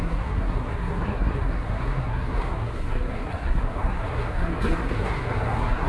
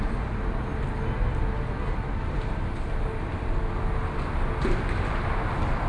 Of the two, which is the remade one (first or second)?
first